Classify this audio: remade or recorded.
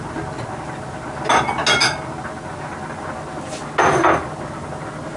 recorded